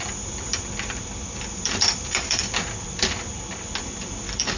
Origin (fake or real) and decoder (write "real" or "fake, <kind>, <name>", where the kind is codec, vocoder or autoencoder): fake, vocoder, BigVGAN v2